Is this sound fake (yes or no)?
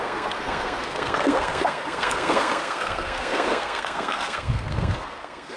yes